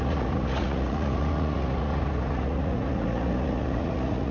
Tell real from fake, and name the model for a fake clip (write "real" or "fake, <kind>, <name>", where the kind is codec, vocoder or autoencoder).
fake, vocoder, Vocos